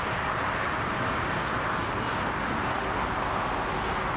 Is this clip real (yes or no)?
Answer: yes